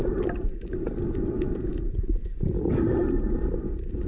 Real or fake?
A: real